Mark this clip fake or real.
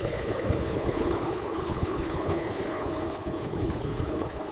fake